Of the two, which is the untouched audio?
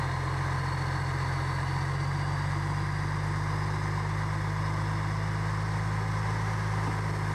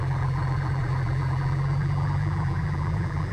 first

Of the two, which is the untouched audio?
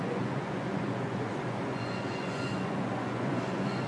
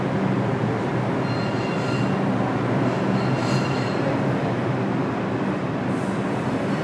second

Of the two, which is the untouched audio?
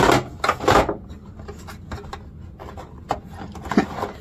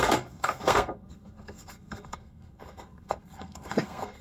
first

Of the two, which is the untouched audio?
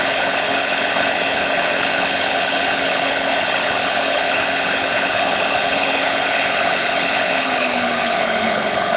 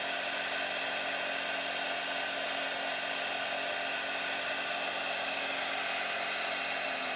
second